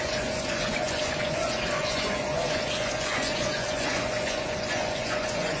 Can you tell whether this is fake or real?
fake